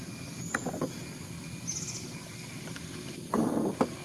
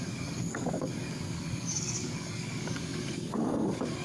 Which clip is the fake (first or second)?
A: second